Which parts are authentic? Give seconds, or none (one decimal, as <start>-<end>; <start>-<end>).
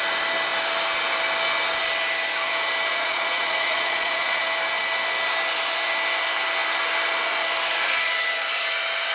0.0-2.9; 4.4-9.1